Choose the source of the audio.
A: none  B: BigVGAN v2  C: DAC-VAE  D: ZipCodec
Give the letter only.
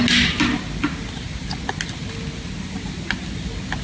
A